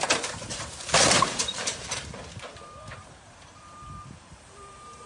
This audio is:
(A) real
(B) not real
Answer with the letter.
B